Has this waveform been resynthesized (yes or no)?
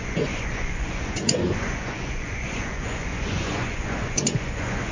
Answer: yes